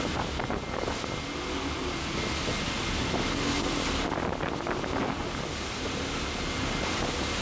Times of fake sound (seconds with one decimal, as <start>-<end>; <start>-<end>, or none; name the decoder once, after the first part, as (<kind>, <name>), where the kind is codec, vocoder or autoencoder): none